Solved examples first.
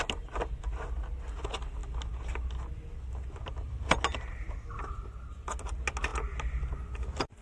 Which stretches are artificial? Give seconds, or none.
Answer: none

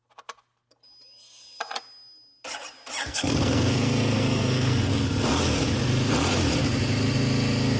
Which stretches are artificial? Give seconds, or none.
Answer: 3.0-4.9

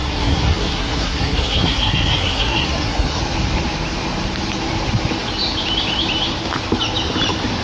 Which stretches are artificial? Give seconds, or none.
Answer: 0.0-3.2

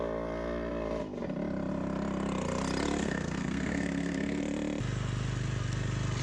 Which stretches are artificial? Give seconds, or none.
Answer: 3.0-4.4

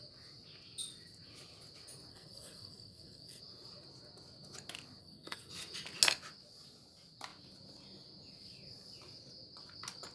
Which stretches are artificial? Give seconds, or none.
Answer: 2.1-3.4; 5.0-5.5

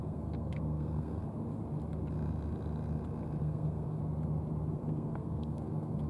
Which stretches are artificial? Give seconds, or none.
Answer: 0.0-1.2; 3.4-4.0; 4.7-6.1

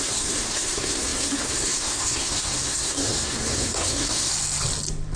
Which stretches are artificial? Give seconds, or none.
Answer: 0.0-4.3

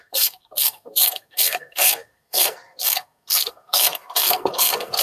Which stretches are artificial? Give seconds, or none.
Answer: 0.0-5.0